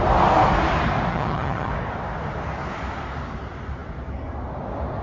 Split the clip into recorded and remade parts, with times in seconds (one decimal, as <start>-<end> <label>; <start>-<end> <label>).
0.0-1.1 recorded; 1.1-1.7 remade; 1.7-5.0 recorded